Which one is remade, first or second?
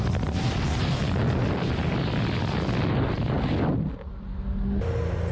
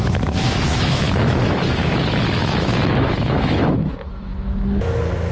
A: second